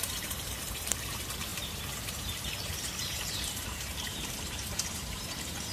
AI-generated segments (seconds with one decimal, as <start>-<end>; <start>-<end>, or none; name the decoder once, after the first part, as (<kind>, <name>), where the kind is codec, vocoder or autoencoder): 0.0-5.7 (vocoder, BigVGAN v2)